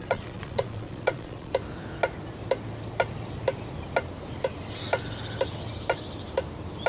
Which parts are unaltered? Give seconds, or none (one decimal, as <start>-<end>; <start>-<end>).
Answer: 1.5-6.9

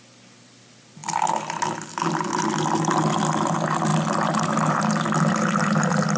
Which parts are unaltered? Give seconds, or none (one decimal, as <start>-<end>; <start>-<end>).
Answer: 0.0-6.2

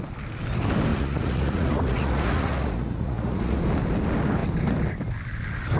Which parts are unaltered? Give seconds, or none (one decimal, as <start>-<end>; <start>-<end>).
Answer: 0.0-0.9; 3.6-5.8